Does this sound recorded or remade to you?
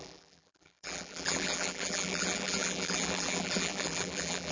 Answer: remade